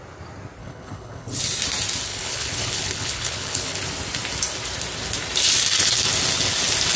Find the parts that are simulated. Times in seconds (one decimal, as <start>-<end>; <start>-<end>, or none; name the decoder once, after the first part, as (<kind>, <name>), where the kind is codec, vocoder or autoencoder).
0.6-1.4 (codec, HILCodec); 2.1-3.8